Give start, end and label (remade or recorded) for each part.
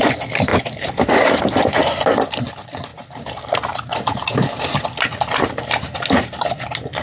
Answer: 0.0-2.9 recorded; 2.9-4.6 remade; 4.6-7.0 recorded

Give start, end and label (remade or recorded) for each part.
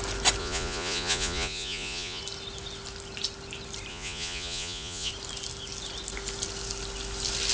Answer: 0.0-0.4 recorded; 0.4-2.2 remade; 2.2-3.9 recorded; 3.9-5.1 remade; 5.1-7.5 recorded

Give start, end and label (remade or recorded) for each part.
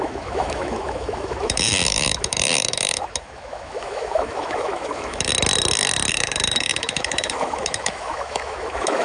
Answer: 0.0-5.3 remade; 5.3-6.1 recorded; 6.1-9.0 remade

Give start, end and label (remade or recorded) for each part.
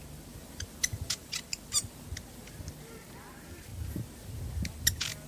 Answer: 0.0-5.3 recorded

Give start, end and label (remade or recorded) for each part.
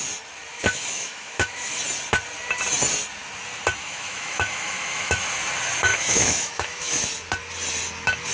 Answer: 0.0-0.5 recorded; 0.5-1.8 remade; 1.8-3.8 recorded; 3.8-5.3 remade; 5.3-5.9 recorded; 5.9-7.0 remade; 7.0-8.3 recorded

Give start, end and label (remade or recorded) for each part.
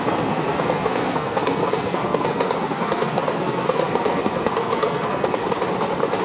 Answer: 0.0-5.4 remade; 5.4-6.2 recorded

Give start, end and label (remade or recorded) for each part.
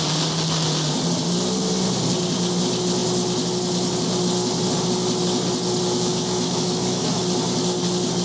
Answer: 0.0-6.1 recorded; 6.1-7.2 remade; 7.2-8.2 recorded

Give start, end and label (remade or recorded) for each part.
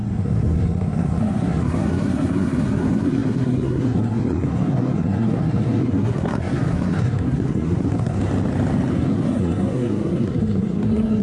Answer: 0.0-8.3 remade; 8.3-8.9 recorded; 8.9-11.2 remade